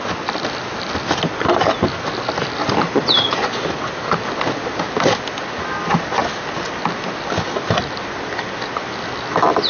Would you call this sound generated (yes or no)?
no